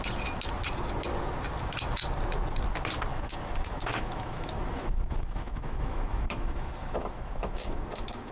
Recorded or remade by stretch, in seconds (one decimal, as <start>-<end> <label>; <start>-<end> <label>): 0.0-3.1 recorded; 3.1-8.3 remade